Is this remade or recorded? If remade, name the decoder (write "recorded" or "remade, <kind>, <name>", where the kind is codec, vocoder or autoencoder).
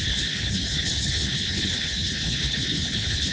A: remade, codec, HILCodec